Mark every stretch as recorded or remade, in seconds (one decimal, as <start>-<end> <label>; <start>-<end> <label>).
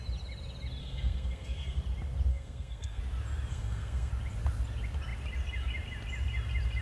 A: 0.0-0.8 recorded; 0.8-1.8 remade; 1.8-2.3 recorded; 2.3-3.0 remade; 3.0-3.5 recorded; 3.5-4.1 remade; 4.1-6.8 recorded